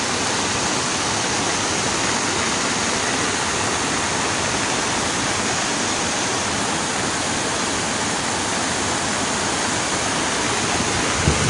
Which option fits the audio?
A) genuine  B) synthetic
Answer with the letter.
A